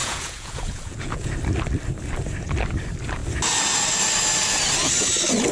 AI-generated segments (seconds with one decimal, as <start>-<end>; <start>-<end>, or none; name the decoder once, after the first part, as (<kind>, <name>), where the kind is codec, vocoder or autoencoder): 0.0-1.3 (vocoder, Vocos)